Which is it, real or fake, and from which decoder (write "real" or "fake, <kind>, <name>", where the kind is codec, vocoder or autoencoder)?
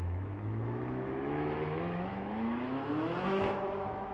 fake, autoencoder, DAC-VAE